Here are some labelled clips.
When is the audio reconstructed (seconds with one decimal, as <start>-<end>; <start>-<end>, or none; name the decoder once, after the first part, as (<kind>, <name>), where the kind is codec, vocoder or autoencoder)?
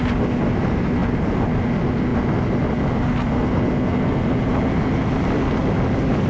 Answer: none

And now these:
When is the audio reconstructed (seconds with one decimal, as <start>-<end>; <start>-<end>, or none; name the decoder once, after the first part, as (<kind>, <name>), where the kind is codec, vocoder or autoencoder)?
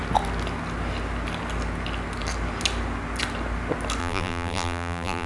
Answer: 4.0-5.3 (vocoder, BigVGAN v2)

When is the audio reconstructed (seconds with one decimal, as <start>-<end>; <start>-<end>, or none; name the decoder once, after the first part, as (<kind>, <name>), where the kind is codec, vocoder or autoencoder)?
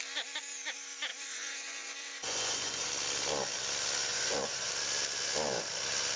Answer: 1.1-2.9 (vocoder, Vocos); 4.1-4.7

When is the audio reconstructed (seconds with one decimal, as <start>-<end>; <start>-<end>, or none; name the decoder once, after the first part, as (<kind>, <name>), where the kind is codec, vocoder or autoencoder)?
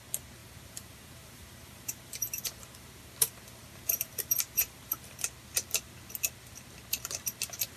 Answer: 0.4-5.1 (vocoder, BigVGAN v2)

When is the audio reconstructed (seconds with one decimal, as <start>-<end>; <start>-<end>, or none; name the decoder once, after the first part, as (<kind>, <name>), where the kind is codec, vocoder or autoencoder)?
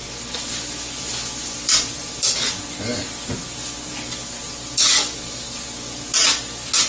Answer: 1.4-2.3 (vocoder, BigVGAN v2)